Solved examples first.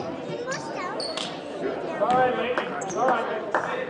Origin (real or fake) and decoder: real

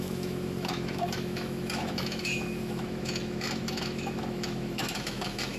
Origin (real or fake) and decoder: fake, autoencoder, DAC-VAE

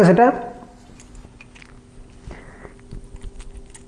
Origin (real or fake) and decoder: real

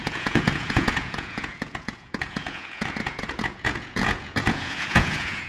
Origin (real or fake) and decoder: fake, vocoder, Vocos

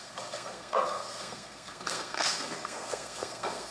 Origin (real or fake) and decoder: fake, codec, SNAC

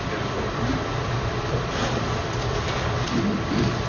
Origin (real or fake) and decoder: fake, vocoder, BigVGAN v2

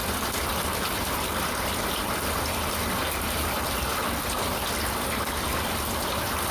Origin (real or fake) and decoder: real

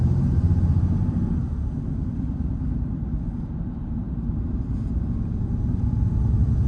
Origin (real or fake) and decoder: fake, vocoder, BigVGAN v2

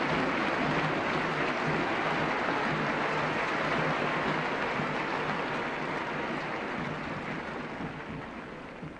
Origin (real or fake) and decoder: real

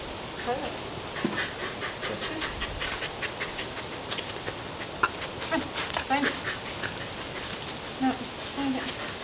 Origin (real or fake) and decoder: real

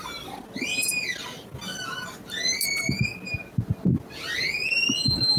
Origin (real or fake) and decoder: real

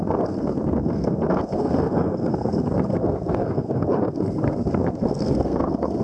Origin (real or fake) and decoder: fake, codec, SNAC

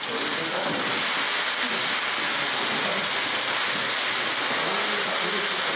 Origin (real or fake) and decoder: real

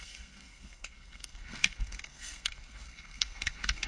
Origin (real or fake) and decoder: fake, codec, SNAC